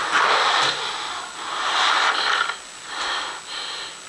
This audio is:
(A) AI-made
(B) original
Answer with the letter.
B